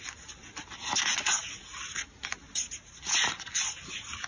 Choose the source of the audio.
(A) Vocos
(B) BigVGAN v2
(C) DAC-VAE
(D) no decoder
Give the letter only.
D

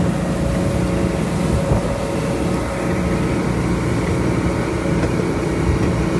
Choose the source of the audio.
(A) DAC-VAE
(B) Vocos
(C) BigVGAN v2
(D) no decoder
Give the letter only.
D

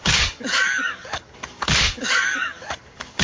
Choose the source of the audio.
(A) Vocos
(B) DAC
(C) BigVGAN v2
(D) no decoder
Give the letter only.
B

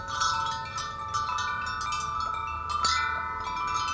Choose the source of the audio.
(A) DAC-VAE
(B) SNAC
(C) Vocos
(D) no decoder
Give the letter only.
D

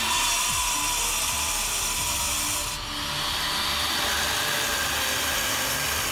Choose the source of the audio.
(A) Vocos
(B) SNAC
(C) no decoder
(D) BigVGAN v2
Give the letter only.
C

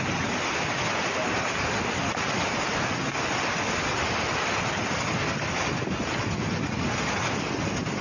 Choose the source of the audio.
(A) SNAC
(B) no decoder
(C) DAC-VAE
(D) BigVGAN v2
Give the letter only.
B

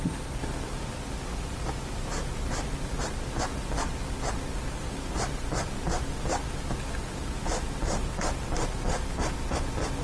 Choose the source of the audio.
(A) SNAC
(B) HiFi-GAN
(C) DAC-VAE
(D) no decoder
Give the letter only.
D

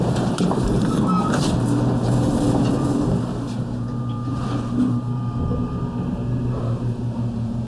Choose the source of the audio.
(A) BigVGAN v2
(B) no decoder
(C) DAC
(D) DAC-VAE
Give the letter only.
A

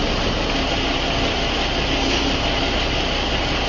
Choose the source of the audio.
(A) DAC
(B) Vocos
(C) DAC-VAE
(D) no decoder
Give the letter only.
D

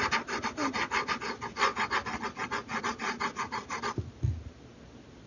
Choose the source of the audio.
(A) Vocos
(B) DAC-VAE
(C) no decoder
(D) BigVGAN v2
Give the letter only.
C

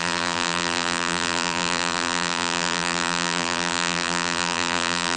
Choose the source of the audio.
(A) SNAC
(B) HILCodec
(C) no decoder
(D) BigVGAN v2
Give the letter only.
D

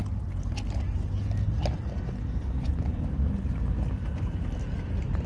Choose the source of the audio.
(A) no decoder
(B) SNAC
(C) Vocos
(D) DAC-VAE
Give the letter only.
A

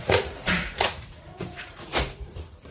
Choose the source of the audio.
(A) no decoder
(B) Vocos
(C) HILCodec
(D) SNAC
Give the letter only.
B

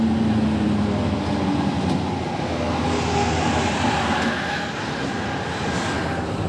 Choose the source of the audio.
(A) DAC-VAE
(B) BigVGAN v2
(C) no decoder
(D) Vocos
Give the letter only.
C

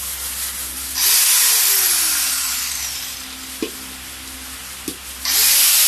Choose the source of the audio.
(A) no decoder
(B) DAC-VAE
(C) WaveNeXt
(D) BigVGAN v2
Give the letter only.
A